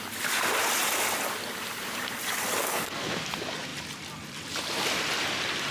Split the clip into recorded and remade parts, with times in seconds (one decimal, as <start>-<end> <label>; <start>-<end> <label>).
0.0-2.6 recorded; 2.6-3.2 remade; 3.2-5.7 recorded